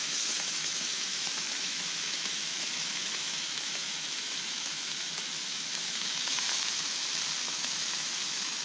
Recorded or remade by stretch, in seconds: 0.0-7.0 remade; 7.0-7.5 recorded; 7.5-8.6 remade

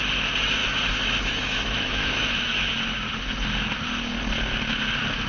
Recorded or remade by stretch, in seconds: 0.0-0.6 recorded; 0.6-2.7 remade; 2.7-5.3 recorded

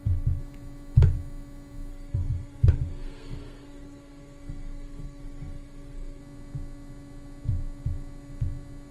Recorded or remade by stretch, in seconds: 0.0-1.9 recorded; 1.9-6.2 remade; 6.2-8.9 recorded

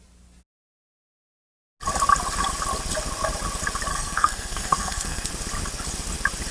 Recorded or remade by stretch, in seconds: 0.0-3.9 recorded; 3.9-5.3 remade; 5.3-6.5 recorded